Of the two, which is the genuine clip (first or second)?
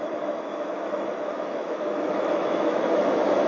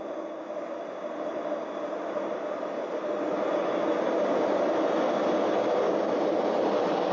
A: second